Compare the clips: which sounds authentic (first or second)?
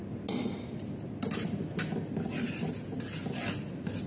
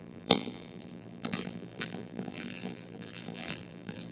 first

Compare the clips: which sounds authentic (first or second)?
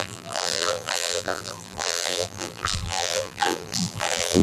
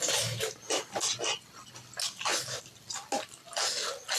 second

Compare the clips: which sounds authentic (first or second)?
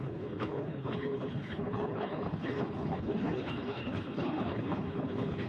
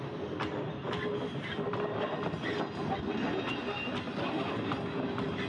second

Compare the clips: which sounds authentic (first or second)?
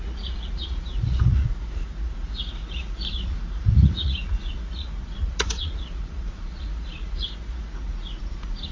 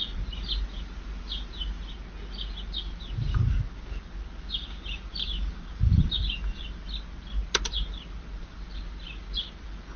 second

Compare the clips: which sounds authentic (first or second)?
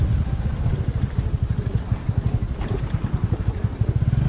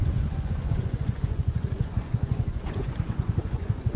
first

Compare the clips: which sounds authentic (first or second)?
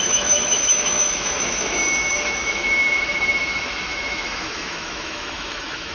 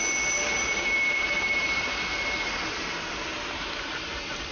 second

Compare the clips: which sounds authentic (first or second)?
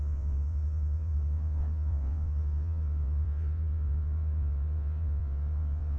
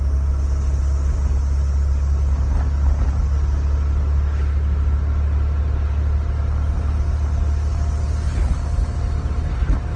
second